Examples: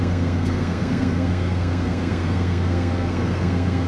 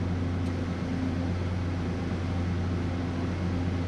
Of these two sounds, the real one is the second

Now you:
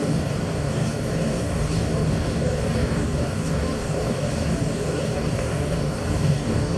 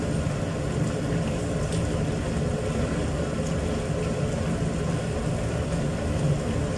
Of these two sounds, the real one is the second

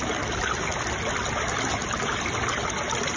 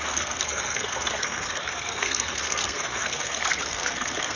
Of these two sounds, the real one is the first